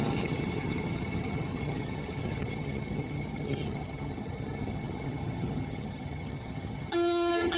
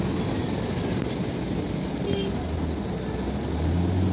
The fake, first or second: first